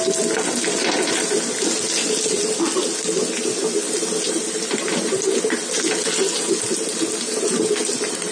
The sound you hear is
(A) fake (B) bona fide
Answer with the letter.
B